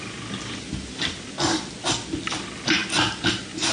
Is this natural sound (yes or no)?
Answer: yes